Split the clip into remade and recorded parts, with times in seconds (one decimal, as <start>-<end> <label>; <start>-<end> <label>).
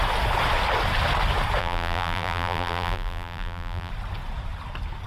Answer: 0.0-1.6 recorded; 1.6-3.9 remade; 3.9-5.1 recorded